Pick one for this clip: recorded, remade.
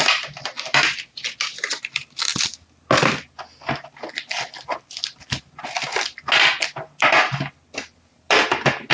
recorded